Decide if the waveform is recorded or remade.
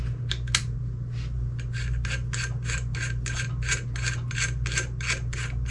recorded